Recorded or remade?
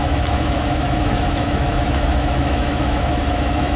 remade